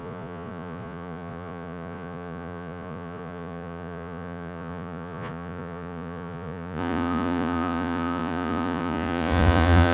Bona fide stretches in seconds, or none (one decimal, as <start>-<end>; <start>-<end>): none